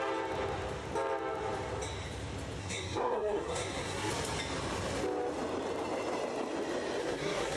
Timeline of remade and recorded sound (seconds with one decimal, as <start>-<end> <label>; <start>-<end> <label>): 0.0-2.6 recorded; 2.6-4.1 remade; 4.1-7.0 recorded; 7.0-7.6 remade